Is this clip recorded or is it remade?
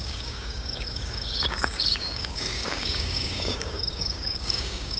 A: remade